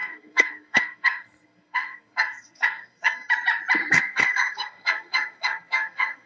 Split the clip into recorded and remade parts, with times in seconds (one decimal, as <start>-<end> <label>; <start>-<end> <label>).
0.0-3.3 remade; 3.3-3.8 recorded; 3.8-6.3 remade